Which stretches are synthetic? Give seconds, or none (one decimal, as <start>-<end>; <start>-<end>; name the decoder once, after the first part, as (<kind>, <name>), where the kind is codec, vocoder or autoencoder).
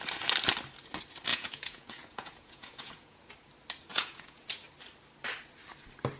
1.3-3.3 (vocoder, Vocos); 3.9-4.5